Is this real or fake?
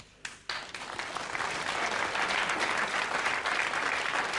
real